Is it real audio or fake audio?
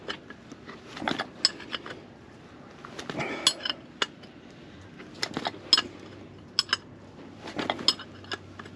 real